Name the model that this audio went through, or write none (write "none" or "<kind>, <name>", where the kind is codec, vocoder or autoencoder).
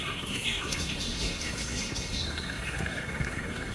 codec, SNAC